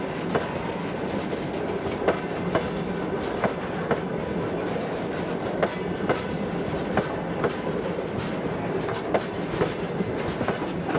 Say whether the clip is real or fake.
real